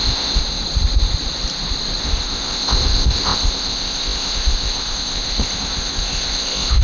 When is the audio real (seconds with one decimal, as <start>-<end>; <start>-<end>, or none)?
0.4-2.0